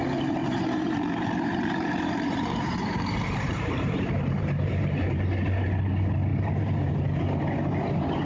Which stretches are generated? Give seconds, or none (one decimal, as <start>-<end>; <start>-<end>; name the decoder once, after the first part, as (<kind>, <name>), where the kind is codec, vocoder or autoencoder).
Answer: 0.4-5.2 (vocoder, BigVGAN v2); 6.3-6.9